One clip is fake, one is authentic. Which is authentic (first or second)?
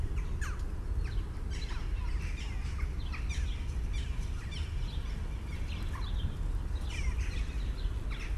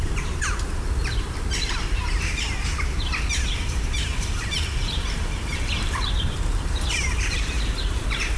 first